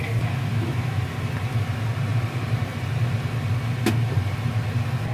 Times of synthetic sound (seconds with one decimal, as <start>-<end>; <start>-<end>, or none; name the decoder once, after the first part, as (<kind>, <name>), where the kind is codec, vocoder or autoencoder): 0.5-1.0 (autoencoder, DAC-VAE)

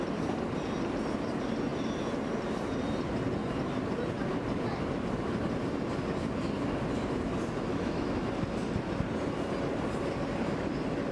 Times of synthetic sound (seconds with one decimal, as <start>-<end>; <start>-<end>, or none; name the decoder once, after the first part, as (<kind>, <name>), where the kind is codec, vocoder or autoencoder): 7.7-8.3 (autoencoder, DAC-VAE)

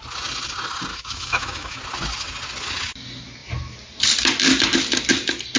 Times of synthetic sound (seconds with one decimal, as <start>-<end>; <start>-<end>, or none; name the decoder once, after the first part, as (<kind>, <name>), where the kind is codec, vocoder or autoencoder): 0.9-1.8 (autoencoder, DAC-VAE)

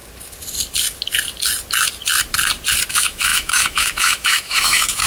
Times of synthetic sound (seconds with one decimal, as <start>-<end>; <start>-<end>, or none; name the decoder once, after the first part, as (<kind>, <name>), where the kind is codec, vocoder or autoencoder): 2.9-5.1 (autoencoder, DAC-VAE)

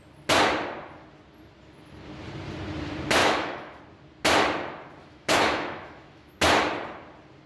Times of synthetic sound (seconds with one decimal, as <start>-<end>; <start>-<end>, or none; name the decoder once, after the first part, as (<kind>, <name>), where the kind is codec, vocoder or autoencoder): 3.2-3.8 (autoencoder, DAC-VAE); 5.0-6.3

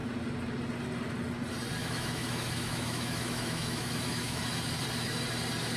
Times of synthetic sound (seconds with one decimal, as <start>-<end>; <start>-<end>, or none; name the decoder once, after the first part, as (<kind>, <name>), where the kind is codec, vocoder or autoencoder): 1.8-4.4 (autoencoder, DAC-VAE)

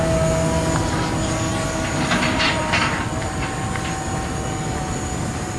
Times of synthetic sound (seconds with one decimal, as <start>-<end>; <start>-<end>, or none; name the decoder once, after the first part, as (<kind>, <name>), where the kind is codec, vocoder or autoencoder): none

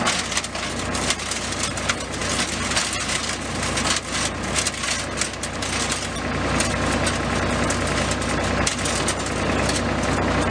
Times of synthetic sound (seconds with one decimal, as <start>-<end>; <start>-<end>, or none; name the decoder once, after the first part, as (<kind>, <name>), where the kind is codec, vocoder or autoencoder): none